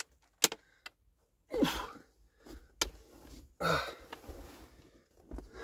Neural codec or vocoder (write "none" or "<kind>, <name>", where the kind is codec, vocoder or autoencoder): none